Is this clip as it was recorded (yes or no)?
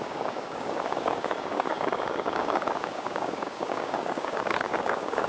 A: no